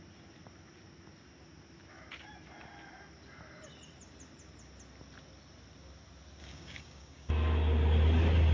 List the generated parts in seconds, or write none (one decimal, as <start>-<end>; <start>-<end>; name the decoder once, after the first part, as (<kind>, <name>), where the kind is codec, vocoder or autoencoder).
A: 6.4-7.3 (codec, DAC)